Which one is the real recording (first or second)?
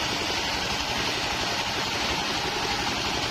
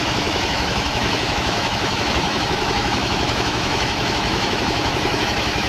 first